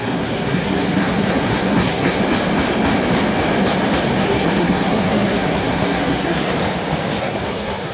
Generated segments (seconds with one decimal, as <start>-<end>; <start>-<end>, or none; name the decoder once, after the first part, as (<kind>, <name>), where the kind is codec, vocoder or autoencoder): 0.0-2.2 (codec, SNAC); 4.2-6.5; 7.2-7.9